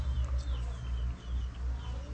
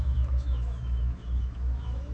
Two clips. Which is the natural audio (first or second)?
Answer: first